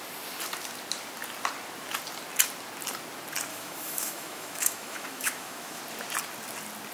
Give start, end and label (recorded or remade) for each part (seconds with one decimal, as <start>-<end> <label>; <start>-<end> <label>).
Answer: 0.0-3.5 recorded; 3.5-5.8 remade; 5.8-6.9 recorded